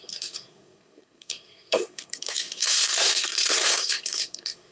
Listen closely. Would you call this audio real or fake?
fake